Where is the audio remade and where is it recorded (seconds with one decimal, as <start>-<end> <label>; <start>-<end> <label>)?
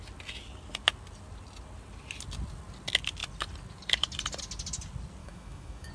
0.0-5.2 recorded; 5.2-5.9 remade